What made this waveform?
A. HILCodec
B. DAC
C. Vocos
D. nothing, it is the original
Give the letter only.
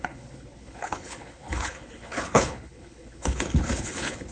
A